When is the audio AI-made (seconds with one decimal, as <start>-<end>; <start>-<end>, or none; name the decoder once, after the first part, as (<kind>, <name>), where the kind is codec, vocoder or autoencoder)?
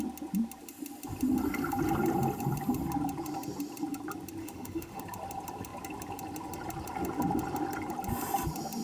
4.4-5.0 (autoencoder, DAC-VAE)